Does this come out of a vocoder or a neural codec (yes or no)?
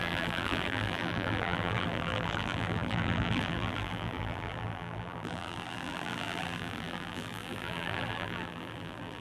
yes